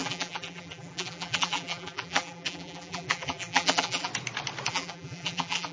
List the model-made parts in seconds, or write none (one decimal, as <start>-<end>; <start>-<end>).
0.0-4.1; 4.7-5.7